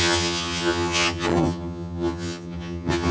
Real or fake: fake